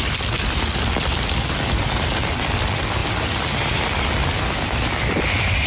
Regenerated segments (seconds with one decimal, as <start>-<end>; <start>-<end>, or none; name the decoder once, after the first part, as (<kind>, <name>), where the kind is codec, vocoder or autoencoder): 0.0-0.4 (vocoder, BigVGAN v2); 1.0-5.7

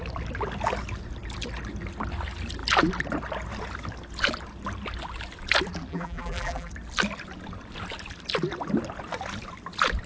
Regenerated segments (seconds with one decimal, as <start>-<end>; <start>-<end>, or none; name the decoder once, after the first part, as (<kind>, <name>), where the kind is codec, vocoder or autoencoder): 5.9-6.7 (vocoder, BigVGAN v2)

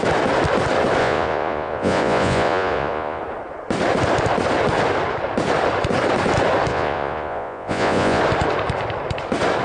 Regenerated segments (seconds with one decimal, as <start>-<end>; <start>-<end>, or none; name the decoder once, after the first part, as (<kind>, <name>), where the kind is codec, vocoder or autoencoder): 1.0-3.2 (vocoder, Vocos); 6.7-8.2

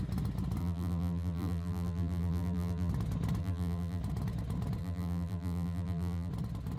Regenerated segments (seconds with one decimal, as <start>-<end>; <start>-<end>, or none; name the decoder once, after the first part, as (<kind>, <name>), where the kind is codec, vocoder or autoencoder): 0.6-2.9 (vocoder, BigVGAN v2); 3.4-4.0; 4.8-6.3